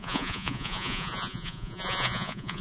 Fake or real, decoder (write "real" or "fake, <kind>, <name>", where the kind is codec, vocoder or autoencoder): fake, vocoder, Vocos